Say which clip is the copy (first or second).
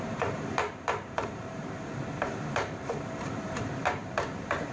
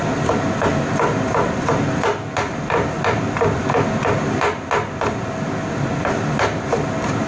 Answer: first